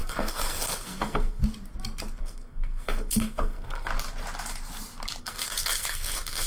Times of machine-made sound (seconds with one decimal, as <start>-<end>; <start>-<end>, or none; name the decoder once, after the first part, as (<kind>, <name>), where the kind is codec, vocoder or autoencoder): 0.0-1.4 (codec, SNAC); 2.2-3.9; 5.2-6.5